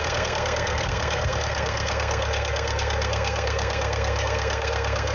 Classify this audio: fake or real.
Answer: fake